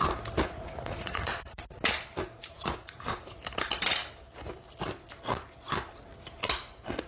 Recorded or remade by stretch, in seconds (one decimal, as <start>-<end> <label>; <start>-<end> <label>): 0.0-0.4 recorded; 0.4-1.8 remade; 1.8-2.3 recorded; 2.3-3.4 remade; 3.4-7.1 recorded